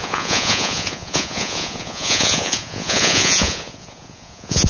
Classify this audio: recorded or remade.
remade